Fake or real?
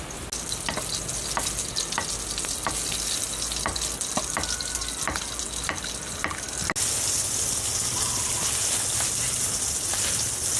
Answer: real